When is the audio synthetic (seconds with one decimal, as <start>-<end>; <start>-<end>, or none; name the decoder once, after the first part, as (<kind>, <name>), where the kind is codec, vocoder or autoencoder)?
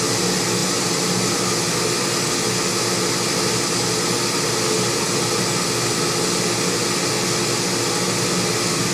none